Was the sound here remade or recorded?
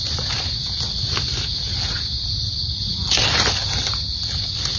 recorded